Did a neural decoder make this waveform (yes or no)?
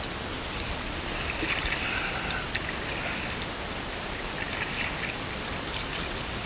no